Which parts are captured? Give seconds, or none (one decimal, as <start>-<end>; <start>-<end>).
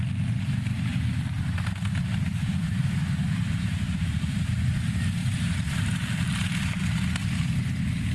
0.0-0.9; 4.6-5.2; 6.2-8.1